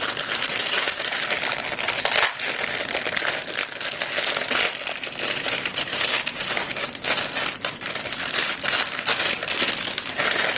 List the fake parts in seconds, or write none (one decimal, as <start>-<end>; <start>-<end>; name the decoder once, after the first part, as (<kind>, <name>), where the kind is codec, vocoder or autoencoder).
0.5-1.0 (codec, DAC); 5.9-6.9